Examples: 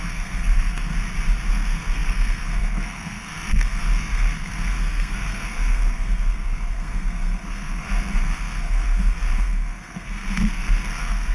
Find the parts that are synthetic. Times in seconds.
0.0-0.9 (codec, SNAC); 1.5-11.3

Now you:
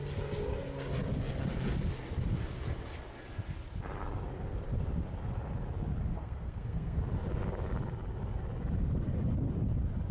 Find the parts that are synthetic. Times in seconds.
6.2-7.0 (codec, SNAC)

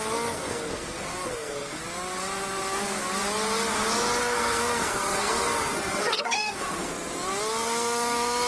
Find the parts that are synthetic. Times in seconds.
0.0-1.8 (codec, SNAC); 4.2-6.9; 7.5-8.5

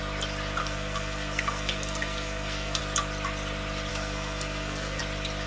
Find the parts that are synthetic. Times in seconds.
0.6-2.8 (codec, SNAC); 3.9-5.0